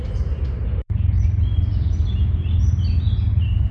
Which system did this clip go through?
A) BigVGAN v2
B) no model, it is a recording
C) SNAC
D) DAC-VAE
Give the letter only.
B